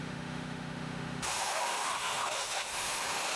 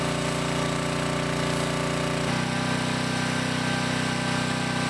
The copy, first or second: first